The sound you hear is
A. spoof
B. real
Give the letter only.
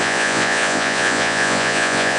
A